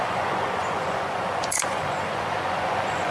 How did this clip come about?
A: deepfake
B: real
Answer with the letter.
A